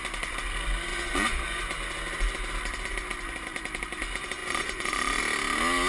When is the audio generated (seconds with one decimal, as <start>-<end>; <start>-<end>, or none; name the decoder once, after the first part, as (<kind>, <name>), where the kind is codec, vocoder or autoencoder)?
0.9-1.6 (vocoder, Vocos); 4.4-5.2